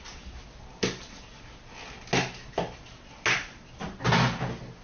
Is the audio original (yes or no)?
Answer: yes